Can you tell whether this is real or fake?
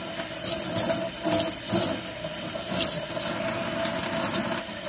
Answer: real